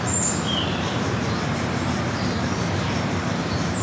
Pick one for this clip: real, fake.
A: fake